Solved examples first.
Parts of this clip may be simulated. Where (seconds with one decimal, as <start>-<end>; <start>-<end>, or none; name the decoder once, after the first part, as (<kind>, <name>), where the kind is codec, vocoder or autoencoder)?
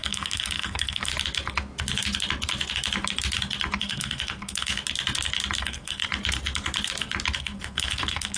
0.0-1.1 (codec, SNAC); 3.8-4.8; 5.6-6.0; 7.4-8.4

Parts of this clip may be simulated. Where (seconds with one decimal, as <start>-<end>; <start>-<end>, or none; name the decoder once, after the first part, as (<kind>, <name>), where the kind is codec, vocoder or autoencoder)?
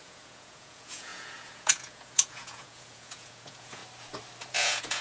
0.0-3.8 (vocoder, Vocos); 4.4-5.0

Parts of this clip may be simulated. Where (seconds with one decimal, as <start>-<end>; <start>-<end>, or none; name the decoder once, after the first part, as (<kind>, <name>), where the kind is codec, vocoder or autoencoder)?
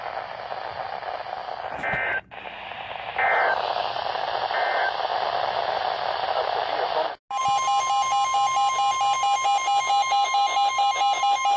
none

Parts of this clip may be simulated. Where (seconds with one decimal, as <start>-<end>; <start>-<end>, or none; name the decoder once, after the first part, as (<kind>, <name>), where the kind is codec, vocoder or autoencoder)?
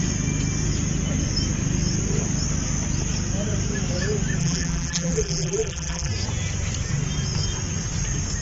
4.4-6.1 (vocoder, BigVGAN v2)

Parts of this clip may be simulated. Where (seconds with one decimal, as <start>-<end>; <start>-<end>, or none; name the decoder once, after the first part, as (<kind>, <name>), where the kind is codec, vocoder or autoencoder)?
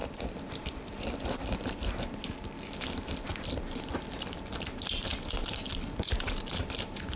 0.0-1.7 (vocoder, BigVGAN v2); 3.3-4.0; 5.1-6.0